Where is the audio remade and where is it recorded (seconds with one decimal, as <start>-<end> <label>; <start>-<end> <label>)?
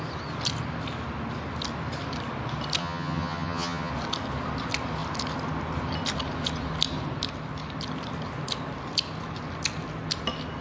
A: 0.0-2.8 recorded; 2.8-3.9 remade; 3.9-10.6 recorded